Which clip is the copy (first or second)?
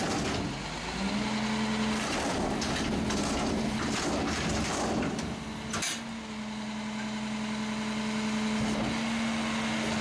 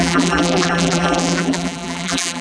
second